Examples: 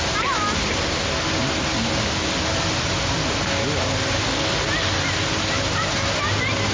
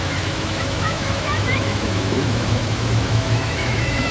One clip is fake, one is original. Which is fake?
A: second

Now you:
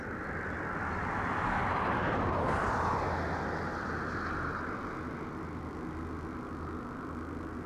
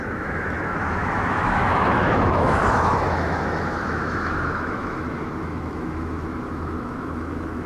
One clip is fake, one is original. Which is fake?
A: second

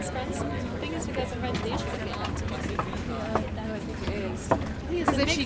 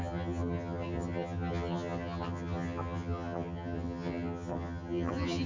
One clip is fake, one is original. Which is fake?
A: second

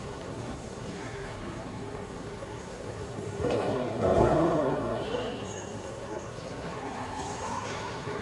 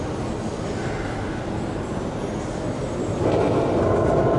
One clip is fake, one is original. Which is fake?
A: first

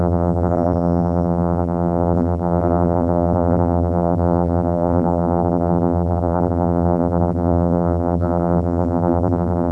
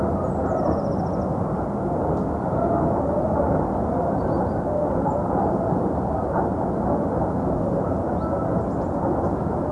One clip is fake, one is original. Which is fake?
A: first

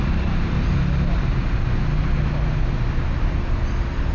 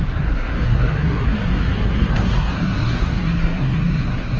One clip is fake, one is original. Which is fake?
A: second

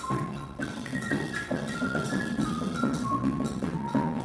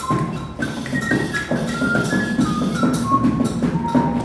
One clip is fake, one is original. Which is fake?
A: first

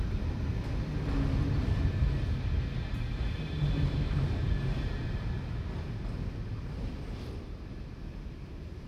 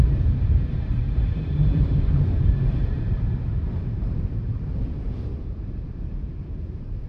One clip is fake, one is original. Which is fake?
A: second